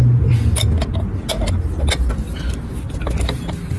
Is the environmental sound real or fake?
real